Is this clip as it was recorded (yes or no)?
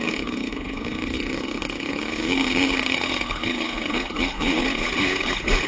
no